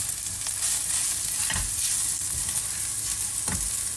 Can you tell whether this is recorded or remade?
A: recorded